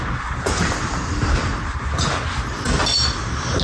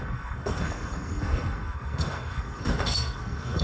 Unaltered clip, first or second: first